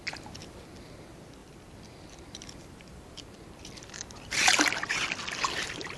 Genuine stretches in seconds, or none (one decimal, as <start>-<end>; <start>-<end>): 0.0-0.4; 0.9-1.4; 4.9-6.0